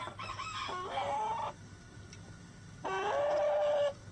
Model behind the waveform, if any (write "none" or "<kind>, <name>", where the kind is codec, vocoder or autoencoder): vocoder, BigVGAN v2